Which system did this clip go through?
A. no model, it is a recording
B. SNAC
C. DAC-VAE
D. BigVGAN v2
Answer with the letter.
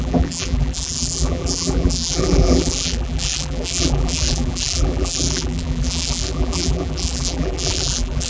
D